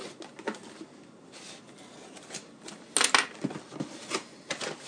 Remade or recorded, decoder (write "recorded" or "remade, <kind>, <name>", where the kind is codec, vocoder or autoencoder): recorded